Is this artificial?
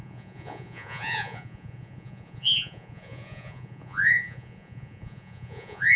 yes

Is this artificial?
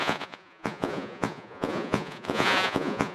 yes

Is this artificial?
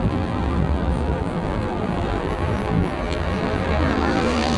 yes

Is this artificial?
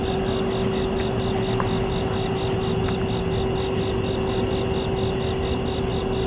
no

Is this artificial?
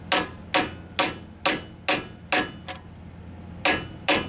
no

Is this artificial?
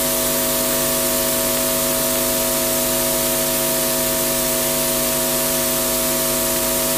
no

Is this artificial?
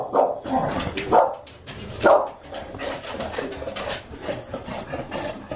yes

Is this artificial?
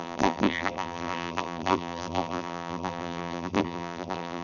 yes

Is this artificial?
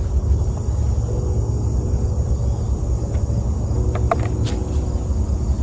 no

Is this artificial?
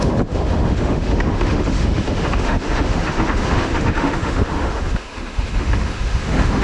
yes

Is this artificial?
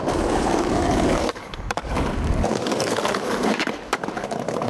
yes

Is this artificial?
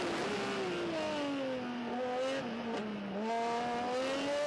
no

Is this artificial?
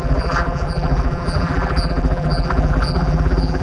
yes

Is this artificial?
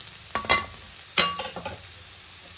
no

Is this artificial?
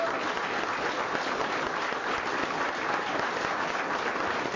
no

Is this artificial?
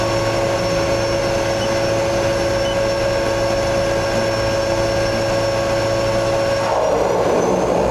no